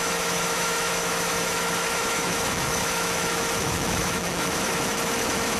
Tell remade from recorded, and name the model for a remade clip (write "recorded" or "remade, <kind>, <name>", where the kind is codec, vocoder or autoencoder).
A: remade, autoencoder, DAC-VAE